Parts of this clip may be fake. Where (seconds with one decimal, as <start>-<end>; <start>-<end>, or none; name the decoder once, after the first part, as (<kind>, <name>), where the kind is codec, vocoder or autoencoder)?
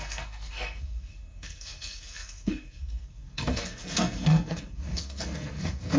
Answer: 0.0-6.0 (codec, SNAC)